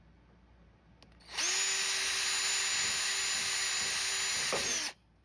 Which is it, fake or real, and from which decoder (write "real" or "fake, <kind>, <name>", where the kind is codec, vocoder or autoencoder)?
real